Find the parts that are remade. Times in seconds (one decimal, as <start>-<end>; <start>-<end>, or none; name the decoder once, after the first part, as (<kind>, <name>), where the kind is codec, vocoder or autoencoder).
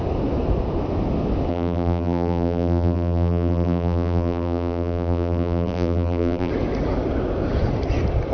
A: 1.5-6.5 (vocoder, BigVGAN v2)